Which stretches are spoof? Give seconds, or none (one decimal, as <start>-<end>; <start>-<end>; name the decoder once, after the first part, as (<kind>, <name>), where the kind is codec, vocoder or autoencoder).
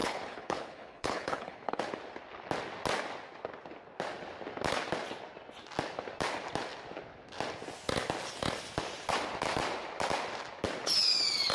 0.0-1.8 (codec, HILCodec)